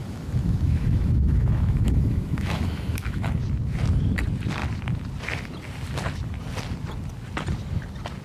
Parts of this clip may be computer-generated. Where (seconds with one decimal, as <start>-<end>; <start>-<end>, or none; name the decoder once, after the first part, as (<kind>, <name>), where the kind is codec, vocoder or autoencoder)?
0.0-3.4 (autoencoder, DAC-VAE)